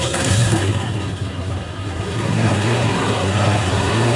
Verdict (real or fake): fake